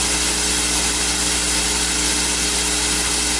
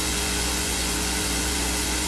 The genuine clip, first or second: first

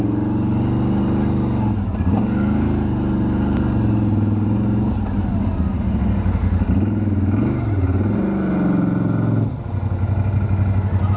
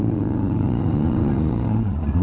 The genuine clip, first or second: first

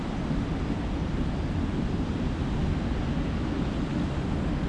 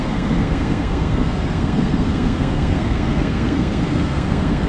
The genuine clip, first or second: first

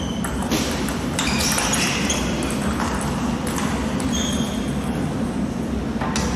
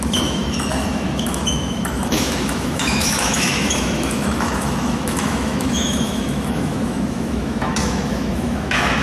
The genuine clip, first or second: first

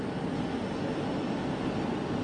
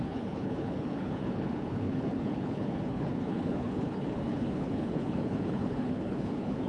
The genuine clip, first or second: first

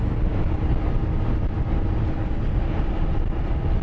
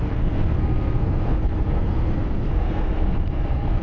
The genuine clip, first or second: first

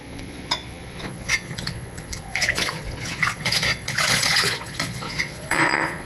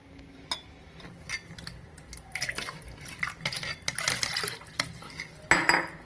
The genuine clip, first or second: second